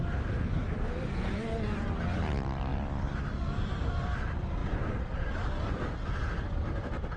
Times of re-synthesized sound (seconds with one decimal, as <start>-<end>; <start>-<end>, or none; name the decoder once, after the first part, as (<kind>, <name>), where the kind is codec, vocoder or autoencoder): 0.6-2.0 (vocoder, BigVGAN v2); 4.6-5.7